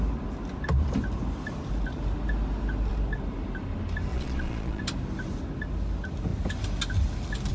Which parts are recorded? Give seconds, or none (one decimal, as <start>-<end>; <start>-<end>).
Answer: 0.0-4.1; 4.8-7.5